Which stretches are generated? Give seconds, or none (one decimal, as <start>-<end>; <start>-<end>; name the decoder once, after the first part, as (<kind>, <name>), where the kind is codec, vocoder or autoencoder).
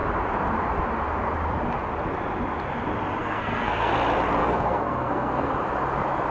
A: 3.2-3.9 (codec, SNAC); 4.4-5.5